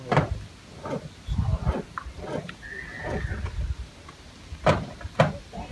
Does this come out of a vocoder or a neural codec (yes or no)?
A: no